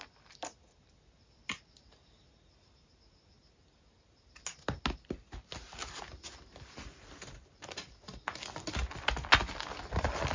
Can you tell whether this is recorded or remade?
recorded